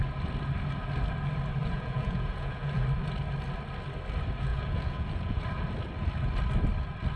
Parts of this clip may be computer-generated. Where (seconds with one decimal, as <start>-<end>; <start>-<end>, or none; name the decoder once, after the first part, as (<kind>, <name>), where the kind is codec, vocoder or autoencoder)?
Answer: 1.6-2.8 (vocoder, Vocos); 4.5-5.4